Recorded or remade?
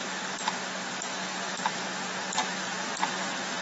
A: recorded